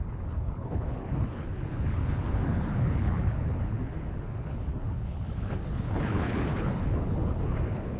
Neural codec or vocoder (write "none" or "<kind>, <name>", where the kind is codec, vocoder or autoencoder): codec, HILCodec